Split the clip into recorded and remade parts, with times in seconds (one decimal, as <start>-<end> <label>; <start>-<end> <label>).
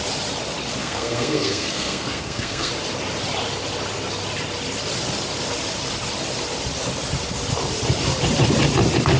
0.0-0.8 recorded; 0.8-2.7 remade; 2.7-9.2 recorded